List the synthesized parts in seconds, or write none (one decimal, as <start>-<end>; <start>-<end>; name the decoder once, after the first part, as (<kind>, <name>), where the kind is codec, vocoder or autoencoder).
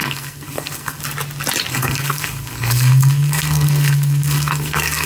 0.0-1.0 (codec, SNAC); 1.7-5.1